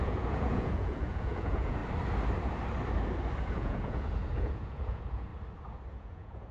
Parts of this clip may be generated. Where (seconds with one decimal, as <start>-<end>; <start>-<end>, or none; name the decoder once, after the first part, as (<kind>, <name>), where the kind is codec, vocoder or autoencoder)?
0.0-1.8 (vocoder, Vocos); 3.5-5.3; 5.9-6.5